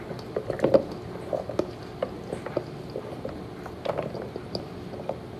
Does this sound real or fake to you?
real